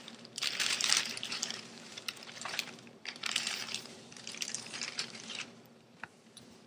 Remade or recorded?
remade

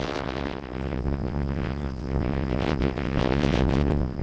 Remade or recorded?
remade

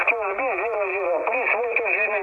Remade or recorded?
recorded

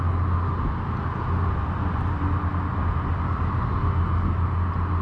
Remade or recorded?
recorded